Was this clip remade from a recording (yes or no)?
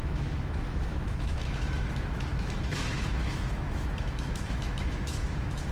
yes